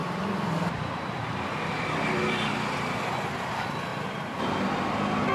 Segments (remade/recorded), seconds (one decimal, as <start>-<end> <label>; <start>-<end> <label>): 0.0-3.2 remade; 3.2-3.9 recorded; 3.9-5.3 remade